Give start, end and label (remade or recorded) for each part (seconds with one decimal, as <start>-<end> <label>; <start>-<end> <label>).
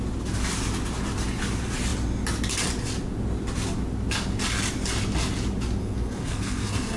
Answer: 0.0-5.8 recorded; 5.8-7.0 remade